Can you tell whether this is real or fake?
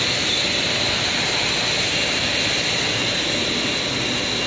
real